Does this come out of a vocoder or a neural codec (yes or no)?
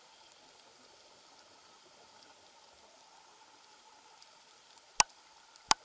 no